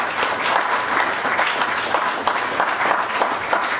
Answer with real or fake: real